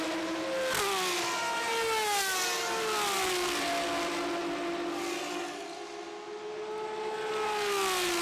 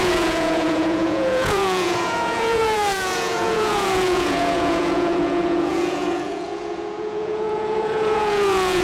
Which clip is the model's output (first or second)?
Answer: second